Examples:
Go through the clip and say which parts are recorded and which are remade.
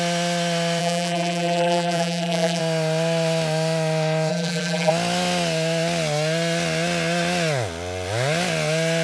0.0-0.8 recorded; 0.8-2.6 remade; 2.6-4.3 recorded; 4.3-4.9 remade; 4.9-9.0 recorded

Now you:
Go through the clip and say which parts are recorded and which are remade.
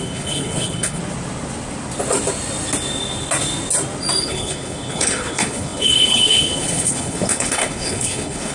0.0-1.0 remade; 1.0-4.2 recorded; 4.2-8.5 remade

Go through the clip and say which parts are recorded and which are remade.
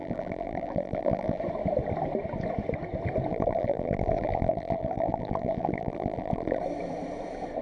0.0-1.4 remade; 1.4-3.3 recorded; 3.3-6.6 remade; 6.6-7.6 recorded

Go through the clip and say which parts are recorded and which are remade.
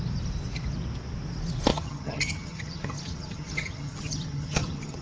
0.0-1.7 recorded; 1.7-5.0 remade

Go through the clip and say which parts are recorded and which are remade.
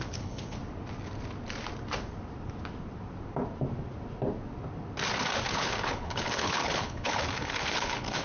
0.0-0.6 remade; 0.6-5.5 recorded; 5.5-8.2 remade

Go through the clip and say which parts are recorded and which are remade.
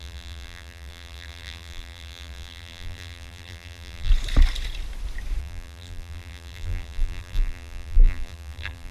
0.0-4.1 remade; 4.1-5.4 recorded; 5.4-8.9 remade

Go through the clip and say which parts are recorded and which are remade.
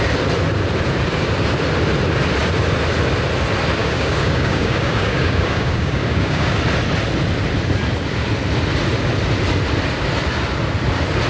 0.0-3.8 recorded; 3.8-6.5 remade; 6.5-11.3 recorded